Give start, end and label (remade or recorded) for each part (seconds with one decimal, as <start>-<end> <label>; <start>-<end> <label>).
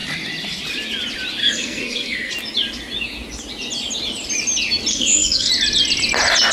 0.0-1.4 recorded; 1.4-2.3 remade; 2.3-4.9 recorded; 4.9-5.5 remade; 5.5-6.5 recorded